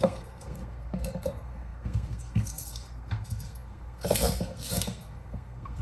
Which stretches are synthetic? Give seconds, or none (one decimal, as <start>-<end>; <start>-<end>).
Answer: 0.0-5.8